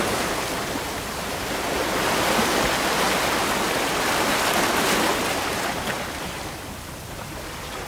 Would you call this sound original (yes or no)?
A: yes